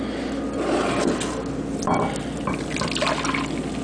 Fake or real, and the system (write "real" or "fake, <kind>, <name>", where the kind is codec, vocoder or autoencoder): real